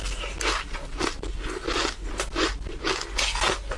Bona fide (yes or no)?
yes